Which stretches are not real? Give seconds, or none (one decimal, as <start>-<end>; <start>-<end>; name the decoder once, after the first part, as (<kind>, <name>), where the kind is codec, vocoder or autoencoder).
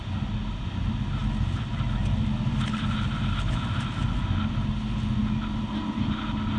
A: none